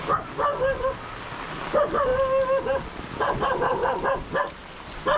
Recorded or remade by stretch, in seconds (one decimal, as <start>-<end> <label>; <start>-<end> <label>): 0.0-0.5 remade; 0.5-1.4 recorded; 1.4-2.1 remade; 2.1-3.2 recorded; 3.2-3.8 remade; 3.8-5.2 recorded